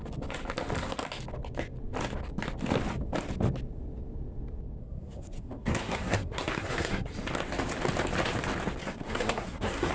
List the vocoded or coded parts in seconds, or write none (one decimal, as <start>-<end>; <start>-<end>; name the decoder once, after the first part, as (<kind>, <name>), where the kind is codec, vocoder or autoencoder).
4.8-7.1 (codec, SNAC); 8.8-9.9